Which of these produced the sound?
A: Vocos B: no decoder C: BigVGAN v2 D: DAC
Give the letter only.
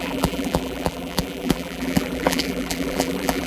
C